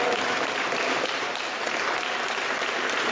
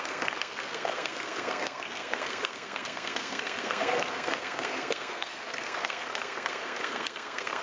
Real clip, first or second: first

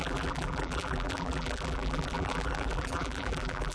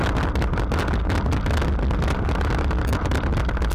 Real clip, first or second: second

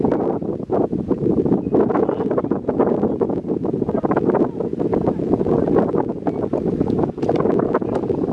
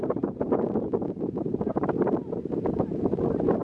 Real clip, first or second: first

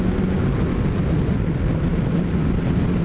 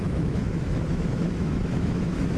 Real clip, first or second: first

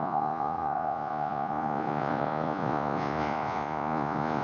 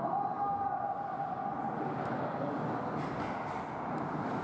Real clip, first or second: second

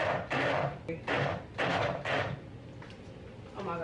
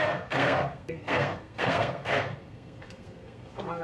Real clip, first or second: first